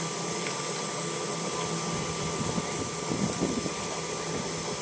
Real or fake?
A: real